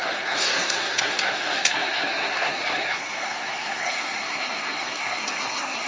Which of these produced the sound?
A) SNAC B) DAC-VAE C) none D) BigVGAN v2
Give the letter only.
A